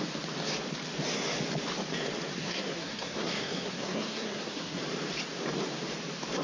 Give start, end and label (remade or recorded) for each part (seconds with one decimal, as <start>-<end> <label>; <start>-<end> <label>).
0.0-2.4 recorded; 2.4-4.8 remade; 4.8-6.4 recorded